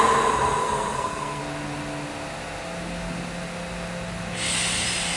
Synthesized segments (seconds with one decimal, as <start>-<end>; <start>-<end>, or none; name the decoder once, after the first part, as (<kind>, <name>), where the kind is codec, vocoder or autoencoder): 0.6-1.4 (codec, SNAC)